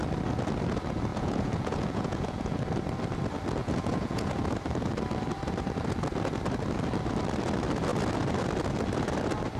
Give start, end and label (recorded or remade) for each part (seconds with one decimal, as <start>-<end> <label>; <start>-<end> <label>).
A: 0.0-1.1 recorded; 1.1-2.6 remade; 2.6-3.6 recorded; 3.6-4.4 remade; 4.4-9.6 recorded

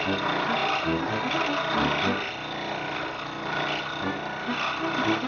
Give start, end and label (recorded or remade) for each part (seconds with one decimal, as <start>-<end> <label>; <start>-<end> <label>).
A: 0.0-5.3 recorded

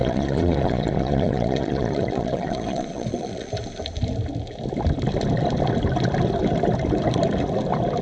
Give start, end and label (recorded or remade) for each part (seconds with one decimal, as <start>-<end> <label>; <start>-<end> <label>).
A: 0.0-3.5 remade; 3.5-8.0 recorded

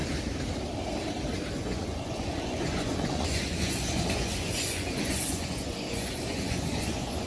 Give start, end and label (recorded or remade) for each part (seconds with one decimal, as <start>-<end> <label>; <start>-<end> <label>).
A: 0.0-1.5 recorded; 1.5-7.3 remade